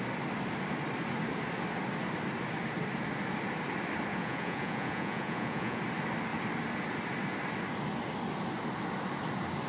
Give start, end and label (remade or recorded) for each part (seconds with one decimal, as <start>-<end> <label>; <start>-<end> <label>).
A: 0.0-4.1 recorded; 4.1-5.8 remade; 5.8-9.7 recorded